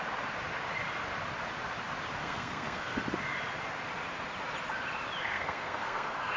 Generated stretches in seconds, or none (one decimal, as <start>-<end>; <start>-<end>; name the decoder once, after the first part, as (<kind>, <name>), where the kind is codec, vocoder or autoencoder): 2.2-3.0 (codec, SNAC); 5.2-6.4